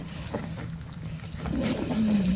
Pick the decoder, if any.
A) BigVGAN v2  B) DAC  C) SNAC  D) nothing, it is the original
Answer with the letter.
D